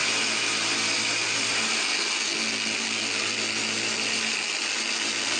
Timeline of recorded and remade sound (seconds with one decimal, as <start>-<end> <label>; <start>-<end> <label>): 0.0-5.4 recorded